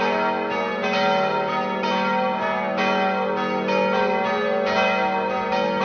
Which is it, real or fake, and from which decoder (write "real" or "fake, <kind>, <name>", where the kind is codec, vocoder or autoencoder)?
real